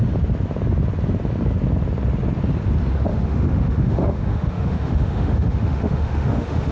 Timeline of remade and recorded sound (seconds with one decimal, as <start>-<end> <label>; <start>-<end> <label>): 0.0-3.1 recorded; 3.1-6.7 remade